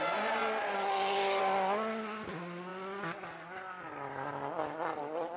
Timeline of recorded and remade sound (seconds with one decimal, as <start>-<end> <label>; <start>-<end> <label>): 0.0-5.4 recorded